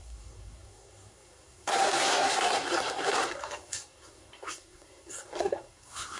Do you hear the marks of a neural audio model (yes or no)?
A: yes